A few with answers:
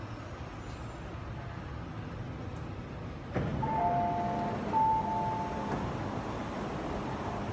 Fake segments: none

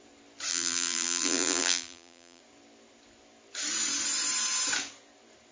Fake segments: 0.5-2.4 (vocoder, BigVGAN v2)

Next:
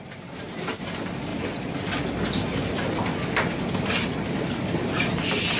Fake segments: none

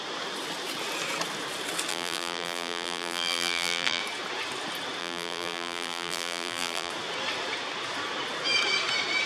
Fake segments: 1.9-4.0 (vocoder, BigVGAN v2); 5.0-6.9